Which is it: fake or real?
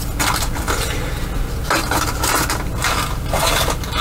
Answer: real